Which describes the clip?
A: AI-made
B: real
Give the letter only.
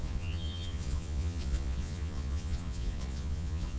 A